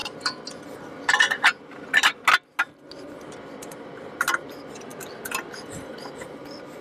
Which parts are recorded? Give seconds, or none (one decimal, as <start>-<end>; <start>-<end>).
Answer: 0.0-6.8